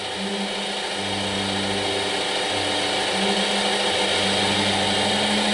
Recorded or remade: recorded